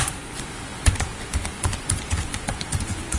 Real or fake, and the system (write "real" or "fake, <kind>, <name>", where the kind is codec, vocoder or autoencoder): fake, vocoder, Vocos